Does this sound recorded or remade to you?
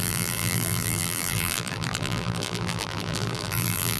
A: remade